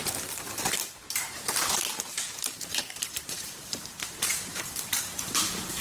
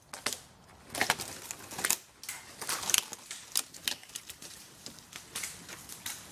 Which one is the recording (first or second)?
second